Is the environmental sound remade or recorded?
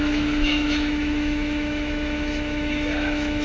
remade